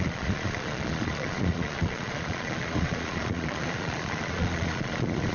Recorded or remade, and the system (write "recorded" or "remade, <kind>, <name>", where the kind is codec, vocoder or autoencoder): remade, vocoder, Vocos